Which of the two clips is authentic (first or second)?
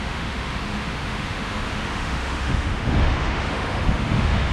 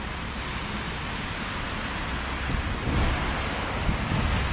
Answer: second